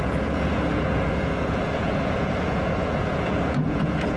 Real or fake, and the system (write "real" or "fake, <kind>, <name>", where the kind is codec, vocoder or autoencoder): fake, vocoder, Vocos